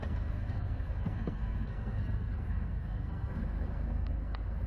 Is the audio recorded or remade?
remade